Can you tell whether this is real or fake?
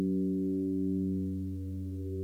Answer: real